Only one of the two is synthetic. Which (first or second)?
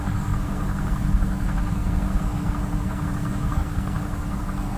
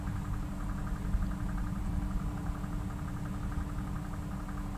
first